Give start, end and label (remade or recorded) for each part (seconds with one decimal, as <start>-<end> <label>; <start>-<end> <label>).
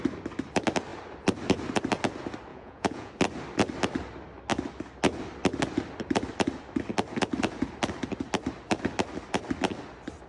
0.0-2.5 recorded; 2.5-3.1 remade; 3.1-10.3 recorded